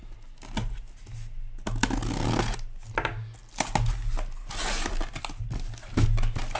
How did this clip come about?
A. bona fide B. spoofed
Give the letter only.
A